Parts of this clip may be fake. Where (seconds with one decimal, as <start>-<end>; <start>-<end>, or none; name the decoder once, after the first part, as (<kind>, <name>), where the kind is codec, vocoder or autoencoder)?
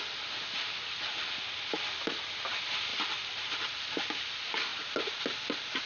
none